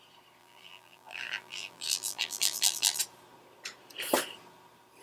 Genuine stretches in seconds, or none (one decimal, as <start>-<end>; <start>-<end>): 0.0-0.4; 3.0-5.0